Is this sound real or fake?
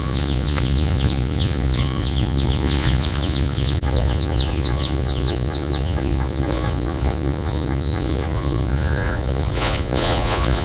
fake